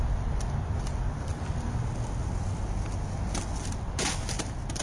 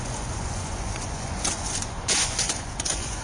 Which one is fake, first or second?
second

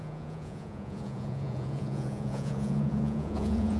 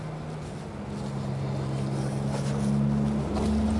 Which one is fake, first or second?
first